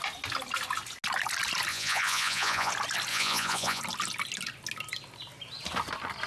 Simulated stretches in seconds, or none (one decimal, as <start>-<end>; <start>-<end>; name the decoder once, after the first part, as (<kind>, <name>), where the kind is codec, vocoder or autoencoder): 1.7-2.7 (vocoder, Vocos); 3.1-3.8